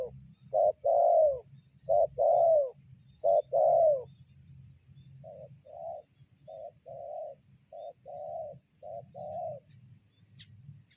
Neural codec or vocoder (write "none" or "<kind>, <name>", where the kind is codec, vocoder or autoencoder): none